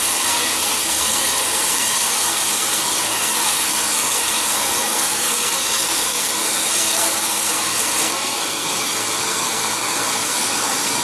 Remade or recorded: remade